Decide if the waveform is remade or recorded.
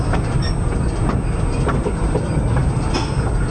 recorded